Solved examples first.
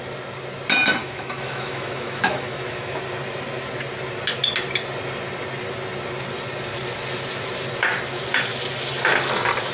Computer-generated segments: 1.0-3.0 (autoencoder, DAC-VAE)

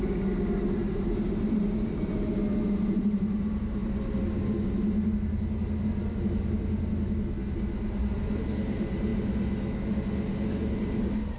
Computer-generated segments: 0.0-3.8 (vocoder, BigVGAN v2); 7.8-9.1; 10.5-11.4

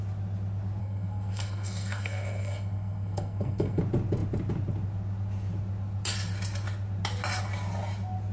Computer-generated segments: 0.8-3.8 (codec, SNAC)